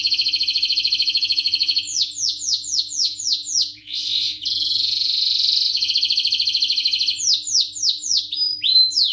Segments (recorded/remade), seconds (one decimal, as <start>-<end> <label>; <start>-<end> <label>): 0.0-1.9 recorded; 1.9-5.9 remade; 5.9-9.1 recorded